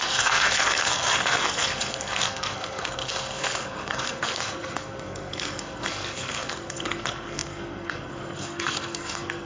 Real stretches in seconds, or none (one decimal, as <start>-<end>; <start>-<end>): none